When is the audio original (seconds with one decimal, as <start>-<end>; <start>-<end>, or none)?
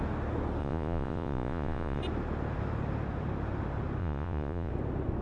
0.0-0.6; 2.0-4.0; 4.7-5.2